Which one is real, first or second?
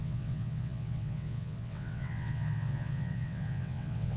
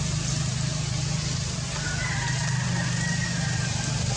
second